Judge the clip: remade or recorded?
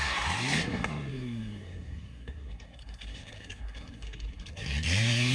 remade